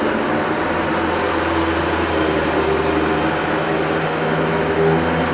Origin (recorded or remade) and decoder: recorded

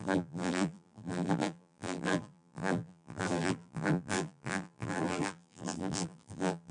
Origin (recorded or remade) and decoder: remade, vocoder, BigVGAN v2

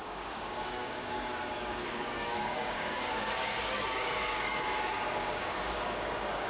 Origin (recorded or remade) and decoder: remade, codec, DAC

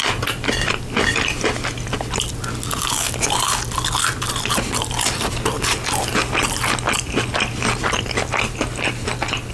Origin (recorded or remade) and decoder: recorded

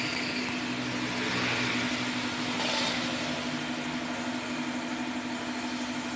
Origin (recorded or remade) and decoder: recorded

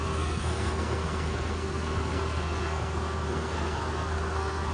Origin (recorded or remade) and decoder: remade, codec, SNAC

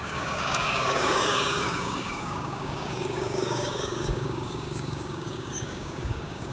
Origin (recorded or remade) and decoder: remade, codec, DAC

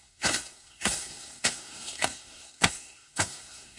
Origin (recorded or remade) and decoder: remade, codec, SNAC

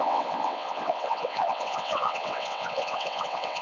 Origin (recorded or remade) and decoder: remade, vocoder, WaveNeXt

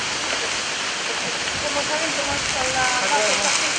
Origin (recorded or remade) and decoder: recorded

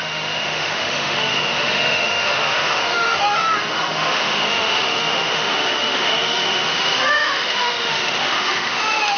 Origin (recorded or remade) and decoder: remade, autoencoder, DAC-VAE